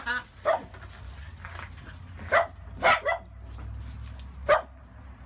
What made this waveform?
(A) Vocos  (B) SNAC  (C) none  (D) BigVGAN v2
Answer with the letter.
C